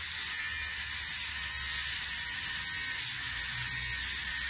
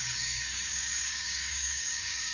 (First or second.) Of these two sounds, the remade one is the second